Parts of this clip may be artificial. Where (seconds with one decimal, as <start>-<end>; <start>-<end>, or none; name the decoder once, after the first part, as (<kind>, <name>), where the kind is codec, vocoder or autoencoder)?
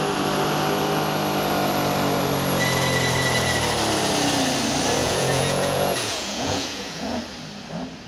5.0-7.2 (vocoder, Vocos)